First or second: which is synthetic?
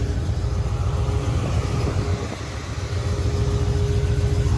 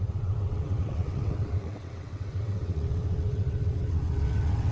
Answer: second